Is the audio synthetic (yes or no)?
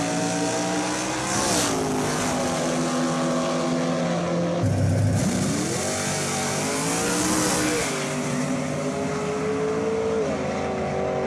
no